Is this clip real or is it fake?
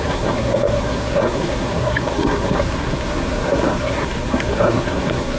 fake